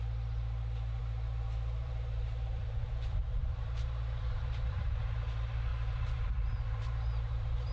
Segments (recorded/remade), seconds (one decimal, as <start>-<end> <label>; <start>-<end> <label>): 0.0-1.0 recorded; 1.0-5.0 remade; 5.0-5.7 recorded; 5.7-7.7 remade